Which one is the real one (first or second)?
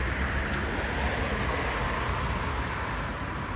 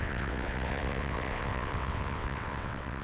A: first